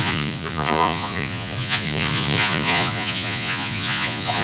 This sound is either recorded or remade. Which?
remade